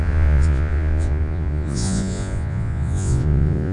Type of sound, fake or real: fake